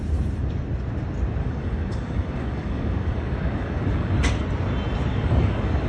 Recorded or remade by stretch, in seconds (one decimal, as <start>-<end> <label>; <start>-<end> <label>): 0.0-1.4 recorded; 1.4-4.3 remade; 4.3-5.1 recorded; 5.1-5.9 remade